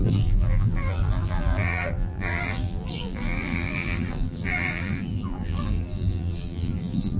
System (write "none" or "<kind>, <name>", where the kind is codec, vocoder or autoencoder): vocoder, BigVGAN v2